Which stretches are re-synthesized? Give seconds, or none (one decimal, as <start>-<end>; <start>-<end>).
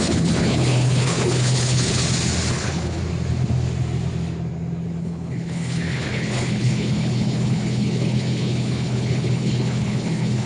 0.0-2.0; 2.5-3.0; 5.0-10.5